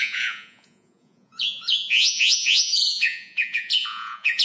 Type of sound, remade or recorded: remade